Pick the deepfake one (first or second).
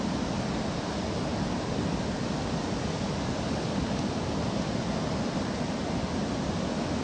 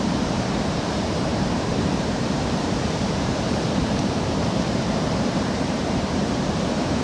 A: second